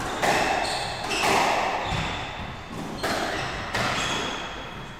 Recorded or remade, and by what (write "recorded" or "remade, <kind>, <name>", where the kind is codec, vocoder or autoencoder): recorded